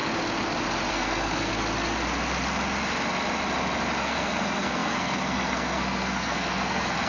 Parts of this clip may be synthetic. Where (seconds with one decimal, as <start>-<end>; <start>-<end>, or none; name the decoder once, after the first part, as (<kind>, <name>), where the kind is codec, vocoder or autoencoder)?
0.9-1.5 (codec, SNAC); 4.0-7.1